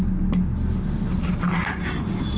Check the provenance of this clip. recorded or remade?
recorded